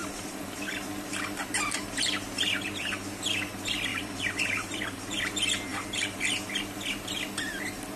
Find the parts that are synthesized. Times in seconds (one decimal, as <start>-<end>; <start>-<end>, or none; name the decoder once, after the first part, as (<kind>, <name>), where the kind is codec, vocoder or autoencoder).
0.0-0.6 (vocoder, BigVGAN v2); 3.9-5.2; 5.7-6.5